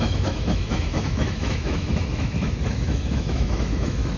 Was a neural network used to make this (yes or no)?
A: yes